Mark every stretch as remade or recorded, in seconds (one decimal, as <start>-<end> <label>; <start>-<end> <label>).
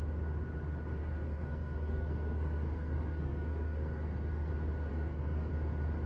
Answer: 0.0-1.0 recorded; 1.0-4.5 remade; 4.5-4.9 recorded; 4.9-5.5 remade; 5.5-6.1 recorded